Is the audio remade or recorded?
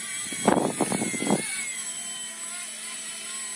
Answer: recorded